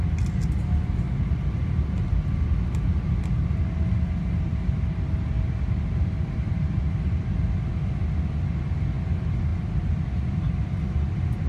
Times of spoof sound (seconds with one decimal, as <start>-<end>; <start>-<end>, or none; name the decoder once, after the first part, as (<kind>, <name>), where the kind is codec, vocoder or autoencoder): 9.5-10.8 (vocoder, BigVGAN v2)